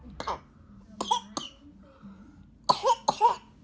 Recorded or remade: recorded